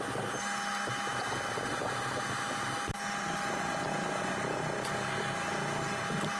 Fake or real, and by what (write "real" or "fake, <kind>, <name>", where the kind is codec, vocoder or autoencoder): real